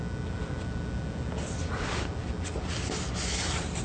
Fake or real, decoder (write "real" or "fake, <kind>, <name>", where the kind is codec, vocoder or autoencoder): real